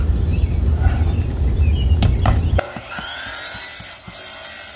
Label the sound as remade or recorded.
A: recorded